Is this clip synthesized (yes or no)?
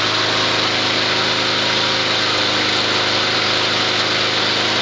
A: no